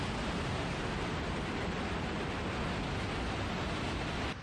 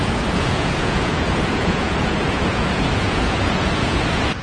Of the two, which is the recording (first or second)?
first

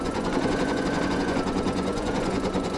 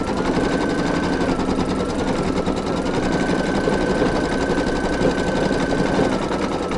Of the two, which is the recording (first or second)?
second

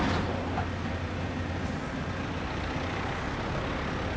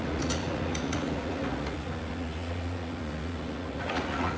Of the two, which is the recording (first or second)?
first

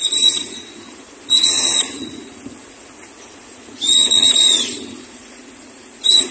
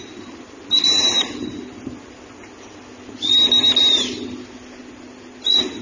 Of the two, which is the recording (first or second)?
second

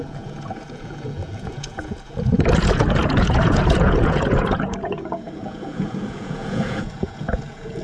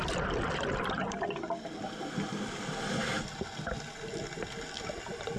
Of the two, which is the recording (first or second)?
second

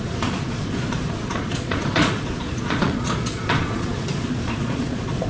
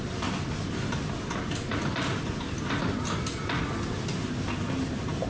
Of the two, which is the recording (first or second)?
second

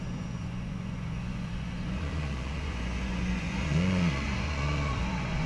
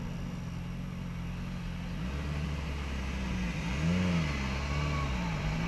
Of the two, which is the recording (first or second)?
second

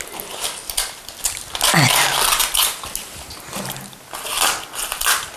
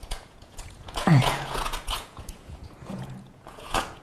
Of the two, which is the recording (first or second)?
first